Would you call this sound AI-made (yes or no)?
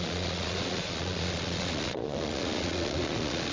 yes